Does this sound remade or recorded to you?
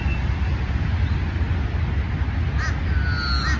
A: recorded